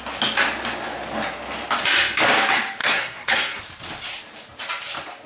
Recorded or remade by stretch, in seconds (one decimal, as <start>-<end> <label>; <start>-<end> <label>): 0.0-2.8 recorded; 2.8-3.6 remade; 3.6-5.3 recorded